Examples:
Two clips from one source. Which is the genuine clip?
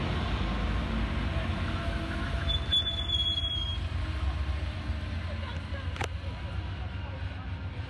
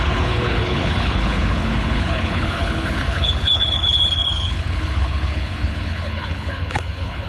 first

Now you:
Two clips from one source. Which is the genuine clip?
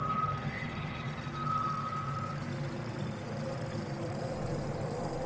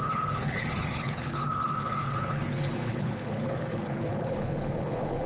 first